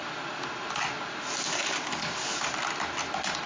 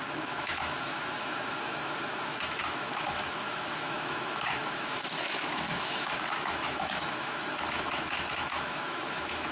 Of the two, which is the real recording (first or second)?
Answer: first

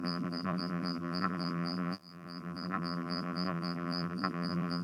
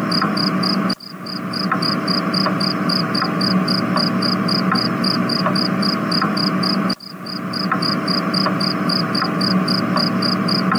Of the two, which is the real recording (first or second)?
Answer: second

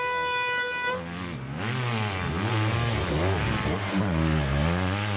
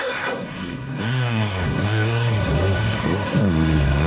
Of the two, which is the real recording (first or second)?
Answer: first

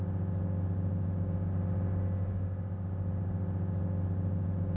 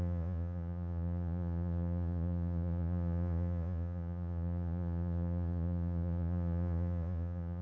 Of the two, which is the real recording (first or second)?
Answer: first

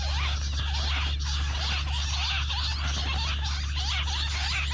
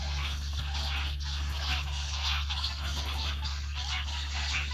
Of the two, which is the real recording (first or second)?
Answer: first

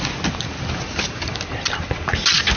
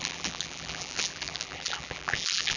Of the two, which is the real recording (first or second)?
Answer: first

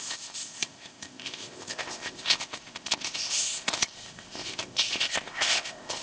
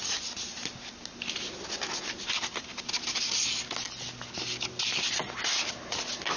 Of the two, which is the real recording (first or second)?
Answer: second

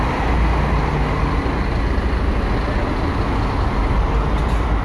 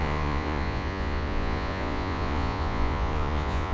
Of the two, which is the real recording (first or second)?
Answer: first